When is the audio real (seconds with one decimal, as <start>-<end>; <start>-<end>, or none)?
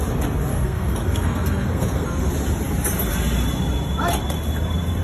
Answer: 0.0-0.5; 2.3-5.0